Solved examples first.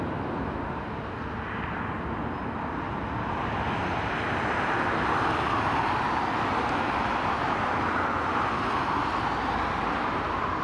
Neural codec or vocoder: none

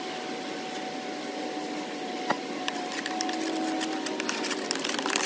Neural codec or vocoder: none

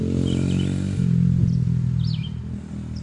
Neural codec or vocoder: none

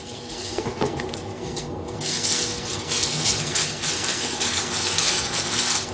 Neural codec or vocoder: codec, SNAC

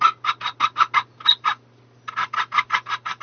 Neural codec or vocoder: none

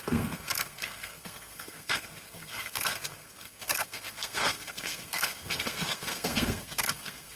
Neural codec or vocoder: codec, SNAC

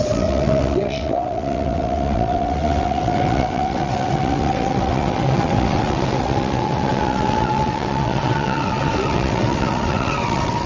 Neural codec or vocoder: vocoder, WaveNeXt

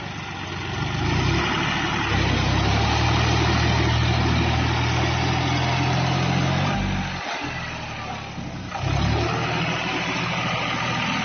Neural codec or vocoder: none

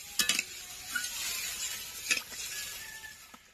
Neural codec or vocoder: none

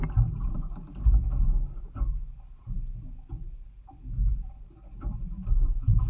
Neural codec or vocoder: none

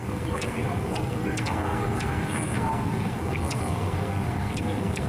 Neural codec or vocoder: codec, SNAC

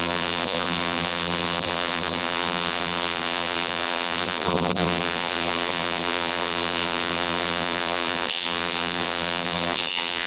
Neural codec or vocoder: vocoder, BigVGAN v2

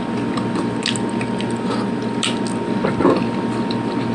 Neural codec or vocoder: none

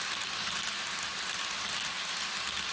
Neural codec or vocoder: none